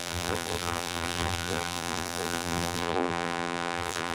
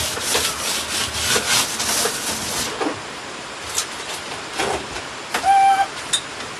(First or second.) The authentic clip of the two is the second